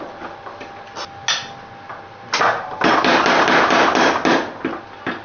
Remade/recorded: recorded